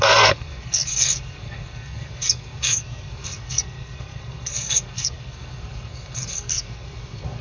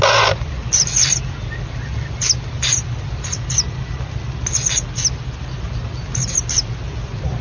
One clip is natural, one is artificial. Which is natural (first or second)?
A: second